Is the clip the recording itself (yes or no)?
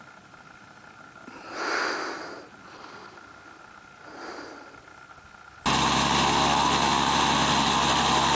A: yes